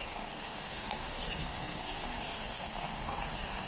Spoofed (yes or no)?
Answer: yes